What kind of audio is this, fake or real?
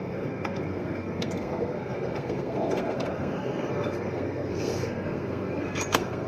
fake